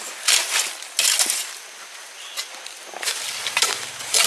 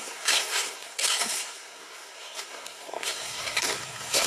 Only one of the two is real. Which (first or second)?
first